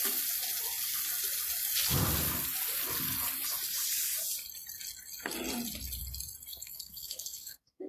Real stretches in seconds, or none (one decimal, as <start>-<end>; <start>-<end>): 0.0-6.5